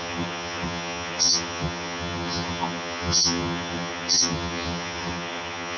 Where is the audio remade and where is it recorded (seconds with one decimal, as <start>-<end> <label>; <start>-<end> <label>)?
0.0-5.8 remade